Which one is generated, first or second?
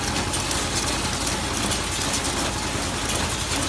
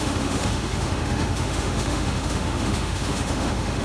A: second